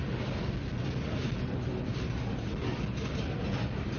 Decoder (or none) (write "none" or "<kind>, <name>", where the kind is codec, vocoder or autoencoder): none